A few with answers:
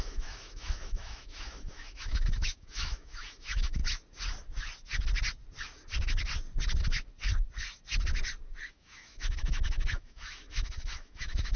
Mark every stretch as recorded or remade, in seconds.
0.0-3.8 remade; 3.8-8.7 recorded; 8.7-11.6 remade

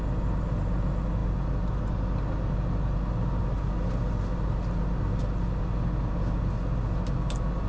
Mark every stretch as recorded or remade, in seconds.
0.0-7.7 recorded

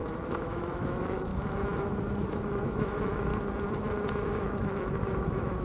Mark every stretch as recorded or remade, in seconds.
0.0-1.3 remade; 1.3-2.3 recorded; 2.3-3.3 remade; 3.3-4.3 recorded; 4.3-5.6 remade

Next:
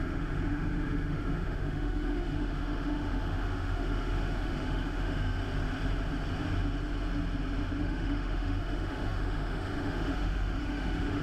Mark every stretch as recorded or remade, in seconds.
0.0-5.4 remade; 5.4-7.8 recorded; 7.8-11.2 remade

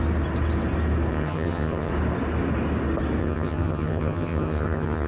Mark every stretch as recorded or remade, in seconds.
0.0-1.1 recorded; 1.1-1.9 remade; 1.9-3.2 recorded; 3.2-5.1 remade

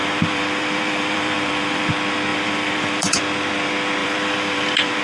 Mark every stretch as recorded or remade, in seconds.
0.0-1.9 remade; 1.9-2.3 recorded; 2.3-3.2 remade; 3.2-4.0 recorded; 4.0-5.0 remade

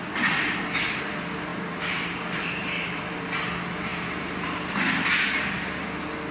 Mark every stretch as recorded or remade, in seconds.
0.0-1.5 recorded; 1.5-3.0 remade; 3.0-3.9 recorded; 3.9-4.8 remade; 4.8-6.3 recorded

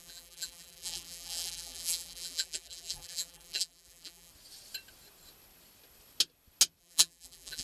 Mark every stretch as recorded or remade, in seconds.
0.0-4.3 remade; 4.3-6.8 recorded; 6.8-7.6 remade